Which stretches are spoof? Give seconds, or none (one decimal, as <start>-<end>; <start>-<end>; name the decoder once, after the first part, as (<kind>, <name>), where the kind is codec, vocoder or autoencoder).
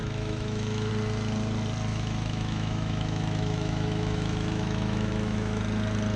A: 0.0-0.9 (autoencoder, DAC-VAE); 1.9-5.6